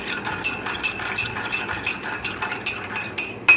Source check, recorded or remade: recorded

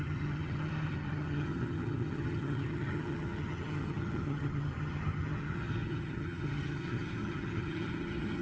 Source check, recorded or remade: remade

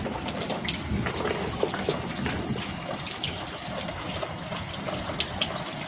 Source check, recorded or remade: recorded